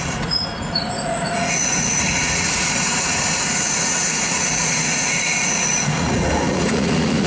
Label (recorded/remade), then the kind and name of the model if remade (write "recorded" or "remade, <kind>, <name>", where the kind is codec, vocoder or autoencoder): remade, vocoder, Vocos